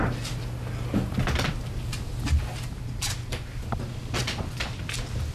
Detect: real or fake real